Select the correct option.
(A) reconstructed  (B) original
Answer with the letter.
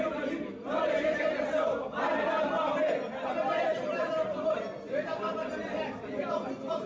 B